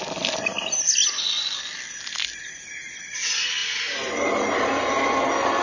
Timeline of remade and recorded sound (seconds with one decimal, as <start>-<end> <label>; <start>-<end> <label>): 0.0-5.6 recorded